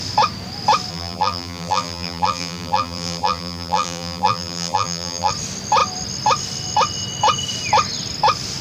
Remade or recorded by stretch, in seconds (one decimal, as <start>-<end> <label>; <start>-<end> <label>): 0.0-0.9 recorded; 0.9-5.3 remade; 5.3-8.6 recorded